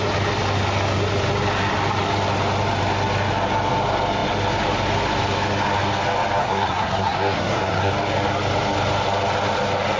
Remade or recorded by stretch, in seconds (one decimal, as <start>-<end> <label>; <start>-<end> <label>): 0.0-6.4 recorded; 6.4-7.9 remade; 7.9-10.0 recorded